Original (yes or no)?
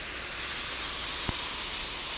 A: no